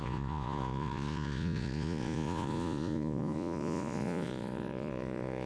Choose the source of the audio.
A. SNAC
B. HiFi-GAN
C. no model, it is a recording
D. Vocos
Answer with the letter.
D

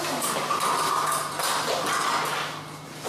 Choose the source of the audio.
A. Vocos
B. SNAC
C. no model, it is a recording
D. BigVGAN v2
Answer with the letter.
C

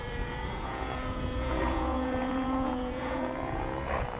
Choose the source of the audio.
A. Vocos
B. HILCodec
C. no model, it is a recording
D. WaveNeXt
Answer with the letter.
A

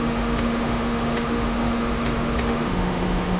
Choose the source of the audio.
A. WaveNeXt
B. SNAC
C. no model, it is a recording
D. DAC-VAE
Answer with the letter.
D